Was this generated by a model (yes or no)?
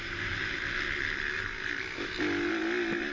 no